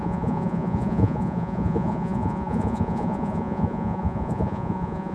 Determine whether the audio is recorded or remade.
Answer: remade